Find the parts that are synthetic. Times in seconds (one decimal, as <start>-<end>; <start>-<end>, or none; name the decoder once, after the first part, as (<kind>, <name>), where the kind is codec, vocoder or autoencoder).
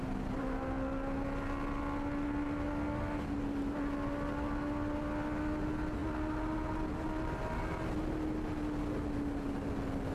none